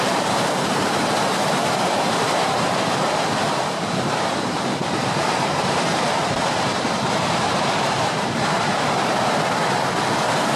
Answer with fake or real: fake